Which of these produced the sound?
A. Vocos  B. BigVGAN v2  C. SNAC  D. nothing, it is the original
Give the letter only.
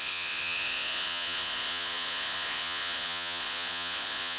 A